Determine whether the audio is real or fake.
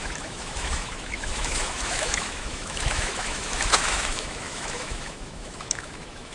fake